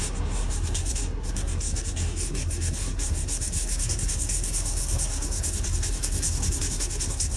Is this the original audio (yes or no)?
no